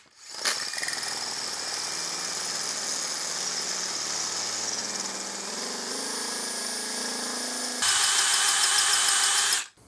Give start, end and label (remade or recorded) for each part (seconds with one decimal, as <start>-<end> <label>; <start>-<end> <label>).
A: 0.0-9.9 recorded